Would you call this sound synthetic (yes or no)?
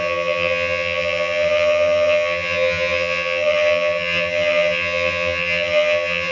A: yes